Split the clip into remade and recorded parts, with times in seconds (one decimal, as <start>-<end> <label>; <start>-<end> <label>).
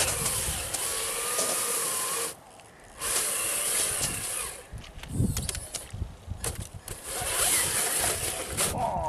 0.0-9.1 recorded